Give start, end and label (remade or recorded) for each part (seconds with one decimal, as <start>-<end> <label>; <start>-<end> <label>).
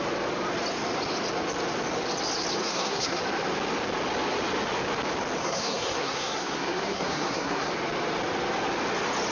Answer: 0.0-2.6 recorded; 2.6-3.2 remade; 3.2-5.4 recorded; 5.4-7.7 remade; 7.7-9.3 recorded